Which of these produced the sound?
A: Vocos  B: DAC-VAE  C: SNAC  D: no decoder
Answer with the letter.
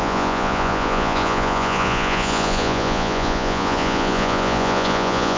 A